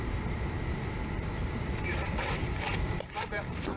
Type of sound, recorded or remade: remade